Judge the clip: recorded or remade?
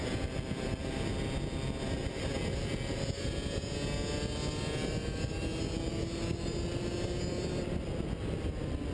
recorded